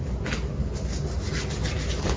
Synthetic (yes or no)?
no